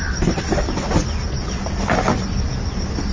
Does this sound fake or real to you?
real